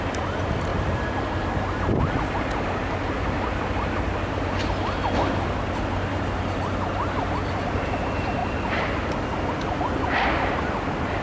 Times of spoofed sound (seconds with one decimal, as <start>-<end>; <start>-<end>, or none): none